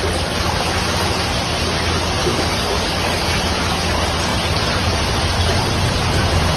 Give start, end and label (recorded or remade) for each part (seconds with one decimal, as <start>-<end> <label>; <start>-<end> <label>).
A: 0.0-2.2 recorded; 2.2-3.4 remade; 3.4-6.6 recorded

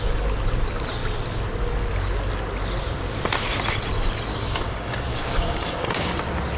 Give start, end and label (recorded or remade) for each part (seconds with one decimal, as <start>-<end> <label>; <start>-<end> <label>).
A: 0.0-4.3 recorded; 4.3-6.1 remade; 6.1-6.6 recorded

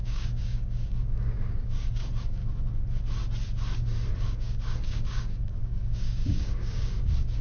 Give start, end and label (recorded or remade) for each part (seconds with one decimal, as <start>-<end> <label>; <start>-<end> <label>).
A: 0.0-2.4 remade; 2.4-4.1 recorded; 4.1-7.4 remade

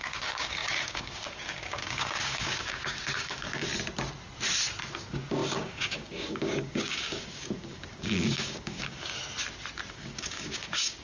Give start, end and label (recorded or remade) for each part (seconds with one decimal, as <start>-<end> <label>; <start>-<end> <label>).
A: 0.0-3.7 remade; 3.7-4.9 recorded; 4.9-9.2 remade; 9.2-9.9 recorded; 9.9-11.0 remade